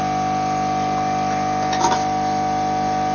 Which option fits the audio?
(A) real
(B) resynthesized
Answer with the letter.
A